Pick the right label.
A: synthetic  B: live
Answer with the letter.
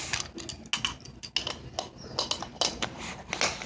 B